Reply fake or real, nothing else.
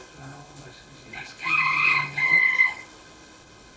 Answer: fake